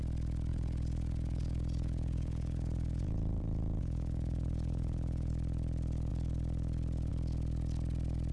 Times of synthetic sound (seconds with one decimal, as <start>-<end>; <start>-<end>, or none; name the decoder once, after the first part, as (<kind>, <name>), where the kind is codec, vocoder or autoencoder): 0.5-5.3 (vocoder, Vocos)

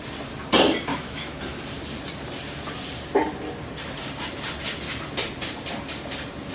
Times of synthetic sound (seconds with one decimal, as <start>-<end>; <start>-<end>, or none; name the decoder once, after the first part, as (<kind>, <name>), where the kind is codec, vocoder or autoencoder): 0.9-1.4 (autoencoder, DAC-VAE)